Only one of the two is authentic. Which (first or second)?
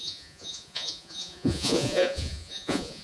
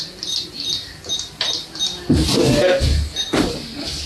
second